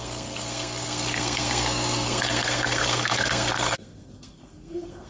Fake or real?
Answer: fake